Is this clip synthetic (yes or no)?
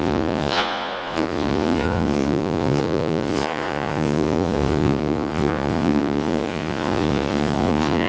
yes